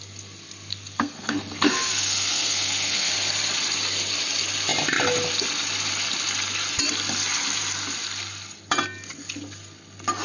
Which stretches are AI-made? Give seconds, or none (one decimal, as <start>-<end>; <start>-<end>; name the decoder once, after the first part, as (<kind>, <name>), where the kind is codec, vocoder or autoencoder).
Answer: 0.7-3.1 (codec, SNAC)